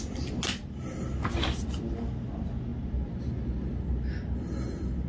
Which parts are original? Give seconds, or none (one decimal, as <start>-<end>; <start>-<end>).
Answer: 0.0-5.1